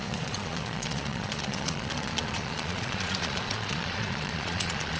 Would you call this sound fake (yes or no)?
yes